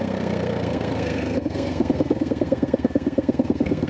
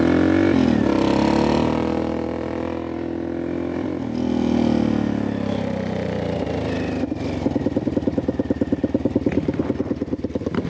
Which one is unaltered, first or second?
second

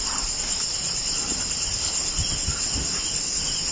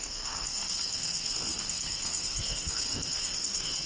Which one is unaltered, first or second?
first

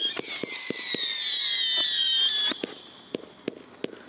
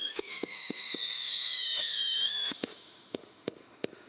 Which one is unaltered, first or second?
first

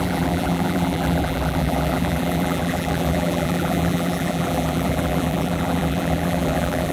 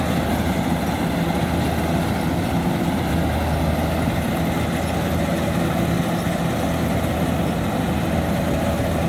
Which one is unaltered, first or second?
second